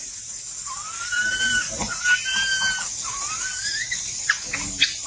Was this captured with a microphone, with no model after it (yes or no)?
yes